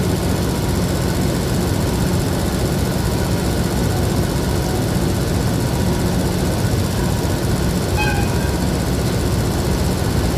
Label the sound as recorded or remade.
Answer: recorded